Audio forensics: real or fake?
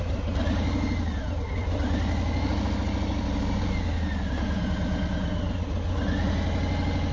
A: real